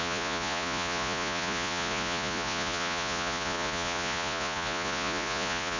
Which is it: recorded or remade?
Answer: remade